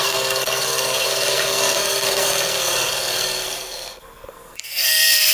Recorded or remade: remade